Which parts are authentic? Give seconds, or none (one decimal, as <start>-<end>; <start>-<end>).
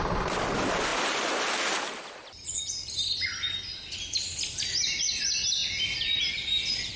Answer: 0.0-7.0